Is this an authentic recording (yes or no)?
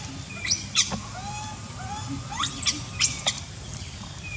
no